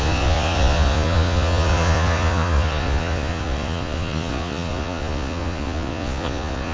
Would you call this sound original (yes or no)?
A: no